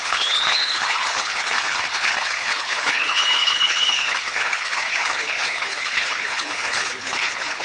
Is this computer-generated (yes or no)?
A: yes